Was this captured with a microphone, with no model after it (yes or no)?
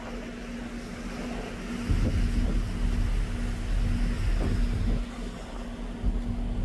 yes